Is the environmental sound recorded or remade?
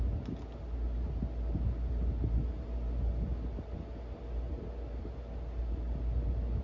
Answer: recorded